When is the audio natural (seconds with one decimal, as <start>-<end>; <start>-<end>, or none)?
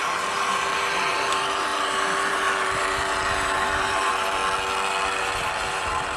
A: 4.4-5.2